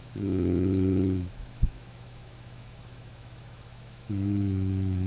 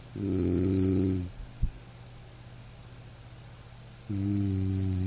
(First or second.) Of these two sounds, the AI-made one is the first